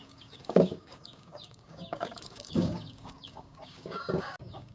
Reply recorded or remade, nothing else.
remade